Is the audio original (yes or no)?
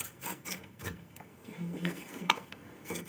no